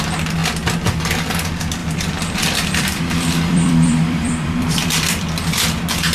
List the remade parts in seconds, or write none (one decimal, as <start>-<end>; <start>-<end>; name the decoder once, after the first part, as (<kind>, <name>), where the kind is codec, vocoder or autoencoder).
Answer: 1.8-5.5 (vocoder, BigVGAN v2)